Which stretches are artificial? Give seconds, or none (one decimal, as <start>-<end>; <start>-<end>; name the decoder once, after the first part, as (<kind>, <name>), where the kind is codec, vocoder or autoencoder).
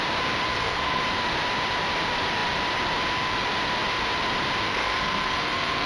0.5-1.0 (codec, SNAC); 4.7-5.9